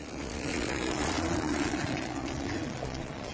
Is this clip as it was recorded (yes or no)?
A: no